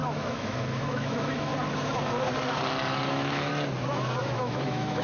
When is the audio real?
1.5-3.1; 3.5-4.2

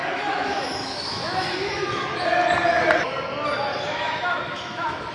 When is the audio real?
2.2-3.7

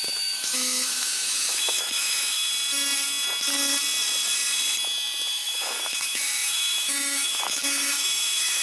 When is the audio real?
2.5-5.3

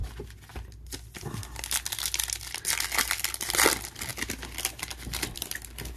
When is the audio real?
0.0-6.0